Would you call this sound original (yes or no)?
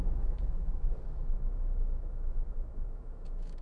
no